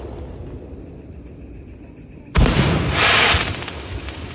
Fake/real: real